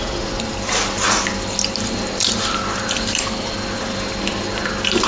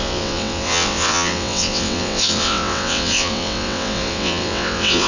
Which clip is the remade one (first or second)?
second